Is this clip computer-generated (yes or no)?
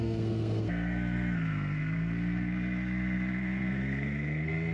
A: yes